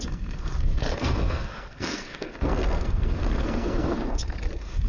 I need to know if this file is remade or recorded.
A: remade